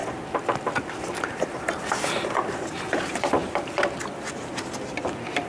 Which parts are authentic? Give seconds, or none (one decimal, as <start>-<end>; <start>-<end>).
0.0-5.5